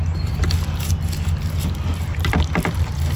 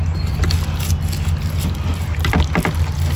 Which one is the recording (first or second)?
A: second